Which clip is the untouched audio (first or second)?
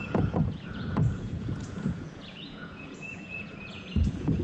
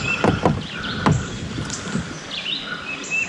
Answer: second